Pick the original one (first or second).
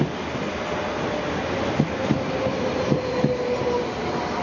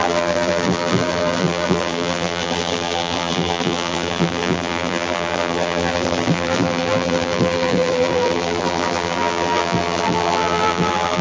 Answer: first